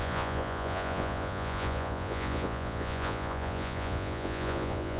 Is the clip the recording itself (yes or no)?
no